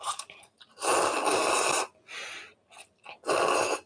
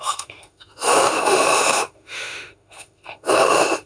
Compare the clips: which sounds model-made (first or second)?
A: second